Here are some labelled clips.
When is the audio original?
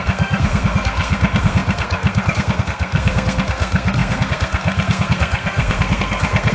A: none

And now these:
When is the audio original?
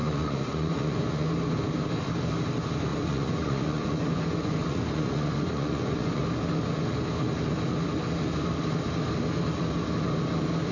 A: 1.3-2.9; 6.2-10.7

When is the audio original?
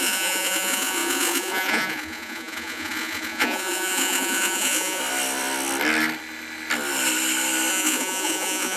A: 5.0-7.7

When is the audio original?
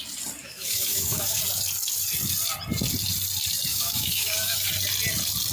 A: 0.0-0.4; 1.4-3.7; 4.7-5.5